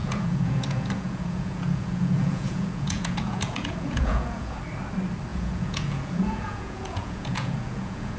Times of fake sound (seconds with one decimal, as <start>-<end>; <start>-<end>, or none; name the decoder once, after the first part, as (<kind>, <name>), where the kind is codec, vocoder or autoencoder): 0.0-4.6 (vocoder, Vocos); 5.3-8.2